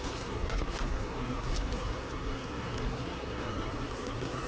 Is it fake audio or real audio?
fake